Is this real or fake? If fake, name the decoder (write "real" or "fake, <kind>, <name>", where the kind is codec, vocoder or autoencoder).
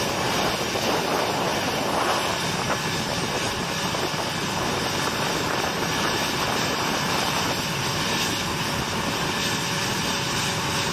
real